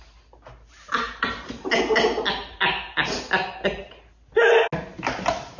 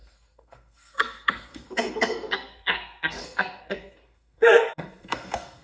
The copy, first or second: second